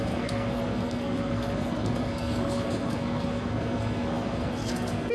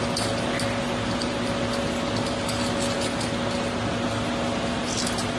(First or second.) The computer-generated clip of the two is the first